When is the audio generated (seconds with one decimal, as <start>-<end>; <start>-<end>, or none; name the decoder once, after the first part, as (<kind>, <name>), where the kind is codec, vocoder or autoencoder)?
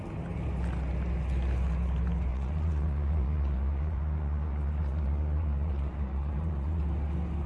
2.3-6.8 (vocoder, Vocos)